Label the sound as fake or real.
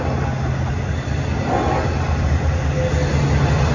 real